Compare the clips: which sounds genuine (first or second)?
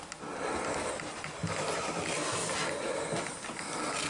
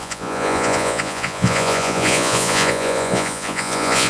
first